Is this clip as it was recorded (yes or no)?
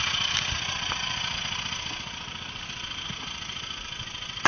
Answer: yes